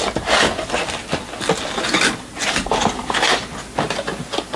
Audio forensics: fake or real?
real